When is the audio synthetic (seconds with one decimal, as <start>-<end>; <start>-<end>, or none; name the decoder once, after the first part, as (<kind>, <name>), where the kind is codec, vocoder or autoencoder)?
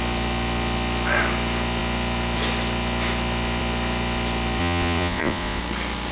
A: 4.6-5.6 (vocoder, Vocos)